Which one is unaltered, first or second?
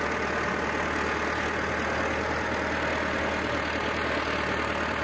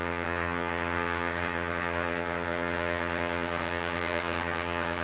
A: first